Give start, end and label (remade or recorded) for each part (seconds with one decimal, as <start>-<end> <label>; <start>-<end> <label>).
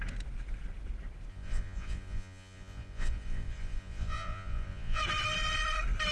0.0-1.3 recorded; 1.3-5.0 remade; 5.0-6.1 recorded